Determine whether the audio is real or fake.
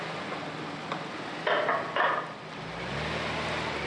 real